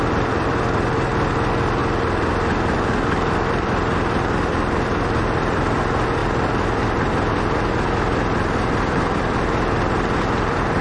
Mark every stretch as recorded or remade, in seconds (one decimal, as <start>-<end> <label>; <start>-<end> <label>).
0.0-1.8 remade; 1.8-3.5 recorded; 3.5-10.8 remade

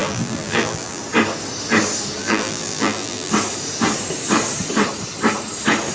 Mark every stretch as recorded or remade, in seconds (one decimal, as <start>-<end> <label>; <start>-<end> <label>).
0.0-1.0 remade; 1.0-2.2 recorded; 2.2-3.3 remade; 3.3-5.9 recorded

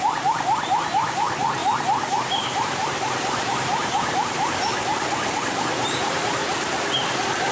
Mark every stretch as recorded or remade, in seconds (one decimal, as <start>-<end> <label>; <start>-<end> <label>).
0.0-4.7 remade; 4.7-5.8 recorded; 5.8-6.4 remade; 6.4-7.5 recorded

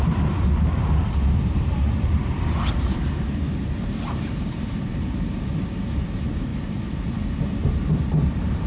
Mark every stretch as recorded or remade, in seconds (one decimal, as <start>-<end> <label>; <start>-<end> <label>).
0.0-6.5 remade; 6.5-7.8 recorded; 7.8-8.7 remade